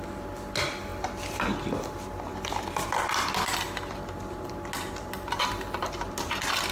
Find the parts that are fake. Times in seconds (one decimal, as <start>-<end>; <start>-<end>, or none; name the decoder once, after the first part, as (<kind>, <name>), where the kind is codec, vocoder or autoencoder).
none